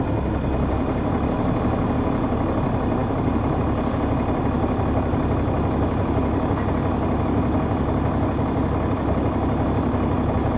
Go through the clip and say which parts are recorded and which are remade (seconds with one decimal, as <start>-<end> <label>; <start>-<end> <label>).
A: 0.0-10.6 recorded